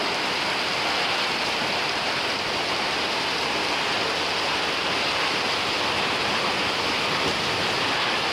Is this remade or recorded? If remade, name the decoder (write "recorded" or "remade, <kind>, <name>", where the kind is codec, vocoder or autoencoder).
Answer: recorded